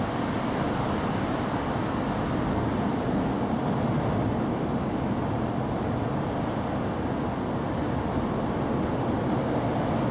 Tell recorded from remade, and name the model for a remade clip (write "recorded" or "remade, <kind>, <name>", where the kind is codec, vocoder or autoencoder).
recorded